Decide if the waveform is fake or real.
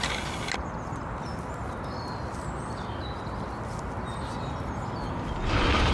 real